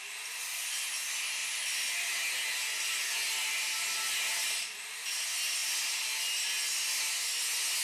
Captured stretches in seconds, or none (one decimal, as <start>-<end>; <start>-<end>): 0.0-7.8

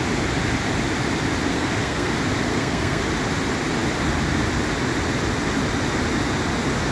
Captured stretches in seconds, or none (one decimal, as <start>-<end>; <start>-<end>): 0.0-1.5; 2.1-2.5; 3.0-6.9

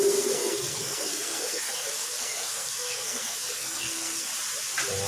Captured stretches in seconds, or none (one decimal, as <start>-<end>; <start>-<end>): 4.3-5.1

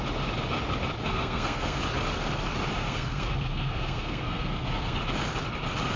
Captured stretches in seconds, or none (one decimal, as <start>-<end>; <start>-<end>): 0.0-1.0; 1.8-2.7; 5.0-6.0

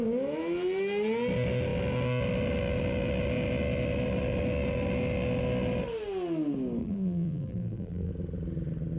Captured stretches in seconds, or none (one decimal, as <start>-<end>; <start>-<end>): 0.0-6.8; 8.1-9.0

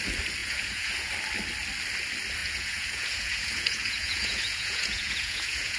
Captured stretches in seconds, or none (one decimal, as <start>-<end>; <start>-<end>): 0.0-0.4; 1.1-2.4